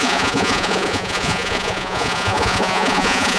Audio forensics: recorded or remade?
remade